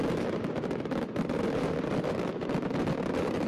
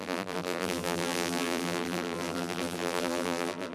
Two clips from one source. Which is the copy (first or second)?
second